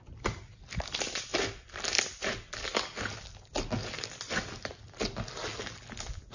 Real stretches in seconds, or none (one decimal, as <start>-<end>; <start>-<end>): 0.0-6.3